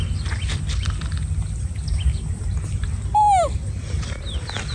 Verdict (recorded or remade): recorded